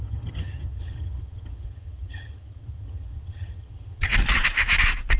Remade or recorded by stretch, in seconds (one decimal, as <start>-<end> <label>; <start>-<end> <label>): 0.0-4.1 remade; 4.1-5.2 recorded